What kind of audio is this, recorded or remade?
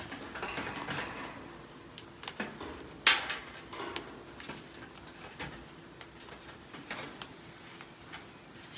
recorded